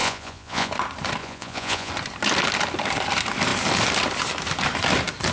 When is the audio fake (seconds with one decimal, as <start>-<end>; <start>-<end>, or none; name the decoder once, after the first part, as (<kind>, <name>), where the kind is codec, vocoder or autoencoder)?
0.0-0.7 (vocoder, Vocos); 1.2-1.9